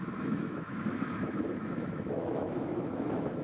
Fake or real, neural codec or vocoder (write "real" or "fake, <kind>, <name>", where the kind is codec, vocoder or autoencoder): fake, autoencoder, DAC-VAE